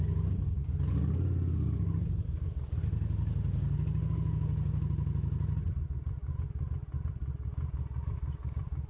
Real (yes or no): yes